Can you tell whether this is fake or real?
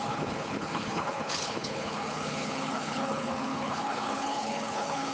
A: fake